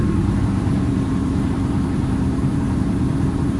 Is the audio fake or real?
fake